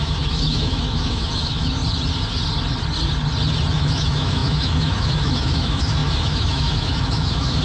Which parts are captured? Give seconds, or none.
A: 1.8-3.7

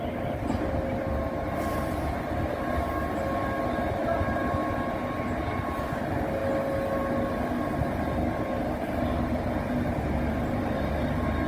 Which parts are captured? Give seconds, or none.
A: 0.0-11.5